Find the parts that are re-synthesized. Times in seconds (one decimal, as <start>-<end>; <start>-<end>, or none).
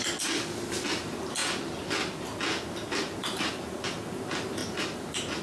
none